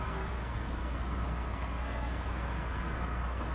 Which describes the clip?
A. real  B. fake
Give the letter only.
B